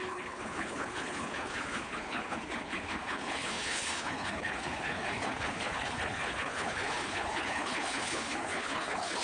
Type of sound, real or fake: fake